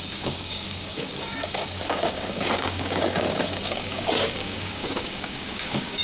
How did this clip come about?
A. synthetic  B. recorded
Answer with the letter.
A